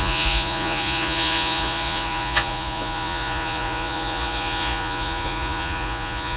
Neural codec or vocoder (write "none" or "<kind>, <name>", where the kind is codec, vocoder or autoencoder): vocoder, Vocos